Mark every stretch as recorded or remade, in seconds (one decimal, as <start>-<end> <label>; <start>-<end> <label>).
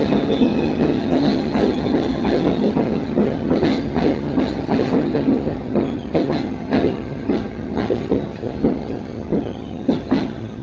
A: 0.0-10.6 remade